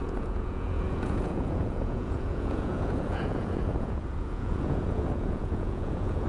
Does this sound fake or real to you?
fake